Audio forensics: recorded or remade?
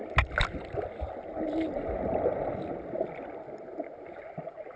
recorded